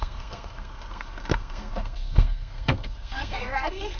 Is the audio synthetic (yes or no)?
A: yes